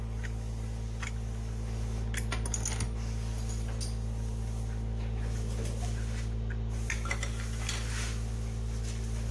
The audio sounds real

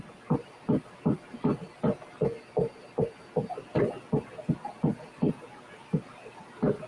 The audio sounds real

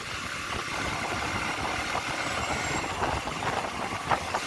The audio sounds real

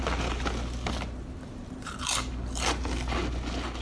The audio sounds real